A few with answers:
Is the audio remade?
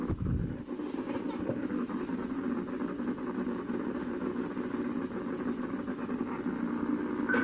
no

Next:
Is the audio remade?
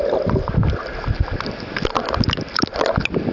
no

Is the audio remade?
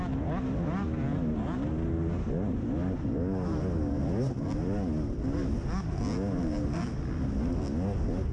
no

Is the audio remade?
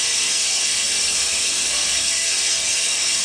yes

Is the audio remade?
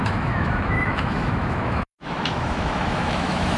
yes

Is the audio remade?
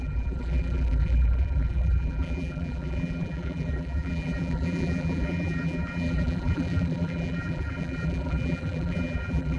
yes